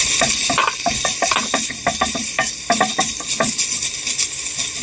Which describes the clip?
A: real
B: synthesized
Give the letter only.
A